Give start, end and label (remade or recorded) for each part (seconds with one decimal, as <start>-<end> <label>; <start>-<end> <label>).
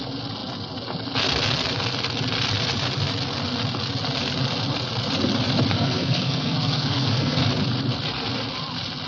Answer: 0.0-5.7 recorded; 5.7-7.4 remade; 7.4-9.1 recorded